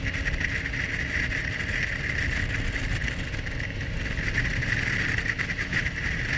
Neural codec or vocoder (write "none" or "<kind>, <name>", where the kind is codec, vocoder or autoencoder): none